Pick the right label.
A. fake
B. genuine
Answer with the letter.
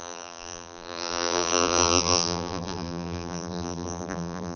A